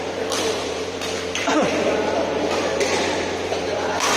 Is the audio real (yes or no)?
no